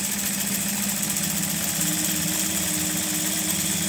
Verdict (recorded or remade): recorded